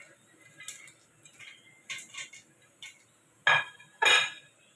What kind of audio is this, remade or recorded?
recorded